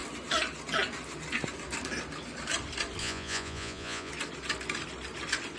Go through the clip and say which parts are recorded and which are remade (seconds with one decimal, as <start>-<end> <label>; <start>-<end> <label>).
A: 0.0-3.0 recorded; 3.0-4.1 remade; 4.1-5.6 recorded